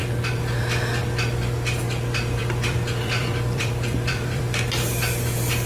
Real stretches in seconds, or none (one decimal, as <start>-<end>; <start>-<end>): 0.0-2.4; 4.4-5.7